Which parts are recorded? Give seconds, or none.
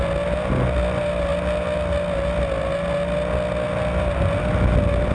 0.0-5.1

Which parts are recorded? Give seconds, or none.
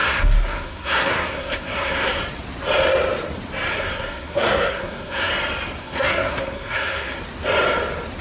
2.2-3.7; 5.3-5.8; 7.2-8.2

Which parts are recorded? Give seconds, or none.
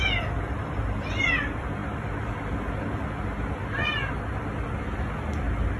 0.0-5.8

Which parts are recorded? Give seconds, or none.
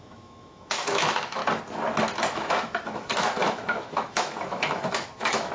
1.4-2.3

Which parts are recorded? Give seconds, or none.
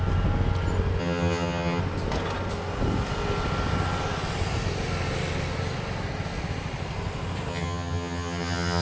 0.0-1.0; 1.8-7.5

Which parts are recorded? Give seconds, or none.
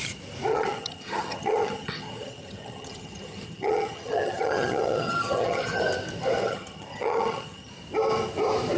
0.0-0.5; 5.8-6.4; 7.7-8.8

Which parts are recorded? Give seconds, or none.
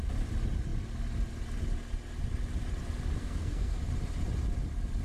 0.0-3.2; 3.8-5.0